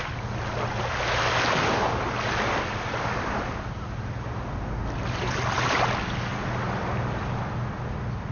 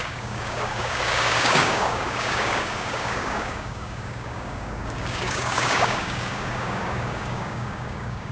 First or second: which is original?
first